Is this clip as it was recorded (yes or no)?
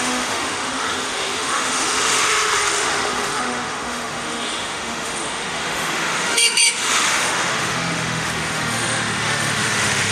no